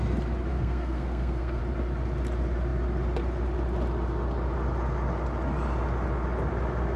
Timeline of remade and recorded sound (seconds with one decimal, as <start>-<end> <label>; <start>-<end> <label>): 0.0-0.5 recorded; 0.5-1.6 remade; 1.6-7.0 recorded